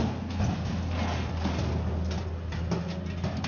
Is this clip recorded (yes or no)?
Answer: yes